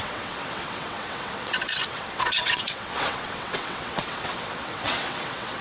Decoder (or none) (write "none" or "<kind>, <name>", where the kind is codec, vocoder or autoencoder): vocoder, WaveNeXt